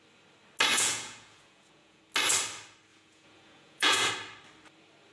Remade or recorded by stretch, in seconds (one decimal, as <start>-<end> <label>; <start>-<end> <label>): 0.0-0.7 recorded; 0.7-2.0 remade; 2.0-2.9 recorded; 2.9-4.1 remade; 4.1-5.1 recorded